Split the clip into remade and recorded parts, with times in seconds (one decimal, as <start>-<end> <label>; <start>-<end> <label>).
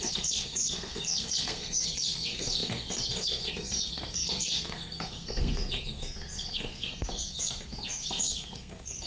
0.0-9.1 remade